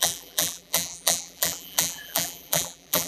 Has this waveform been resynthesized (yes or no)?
yes